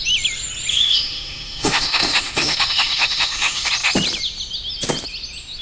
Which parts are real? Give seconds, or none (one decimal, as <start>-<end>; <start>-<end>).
0.0-0.7; 3.7-5.6